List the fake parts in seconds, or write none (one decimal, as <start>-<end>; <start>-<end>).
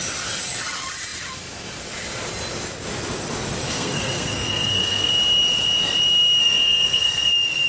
3.6-5.1; 6.4-7.3